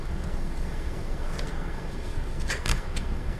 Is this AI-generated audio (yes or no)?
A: yes